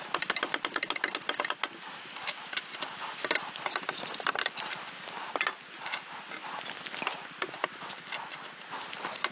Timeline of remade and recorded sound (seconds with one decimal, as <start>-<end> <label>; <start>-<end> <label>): 0.0-9.3 recorded